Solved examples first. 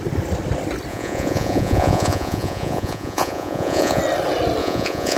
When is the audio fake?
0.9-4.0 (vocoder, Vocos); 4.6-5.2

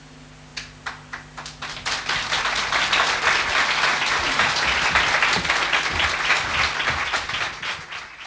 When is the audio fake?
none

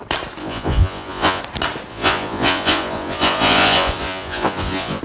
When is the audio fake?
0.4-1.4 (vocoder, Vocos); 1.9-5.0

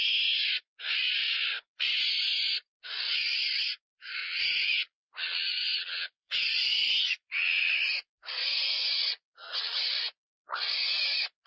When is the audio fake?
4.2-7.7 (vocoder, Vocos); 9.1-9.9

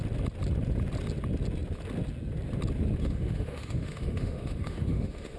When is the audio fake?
3.0-5.4 (autoencoder, DAC-VAE)